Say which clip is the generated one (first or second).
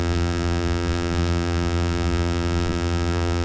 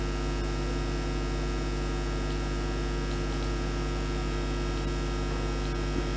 first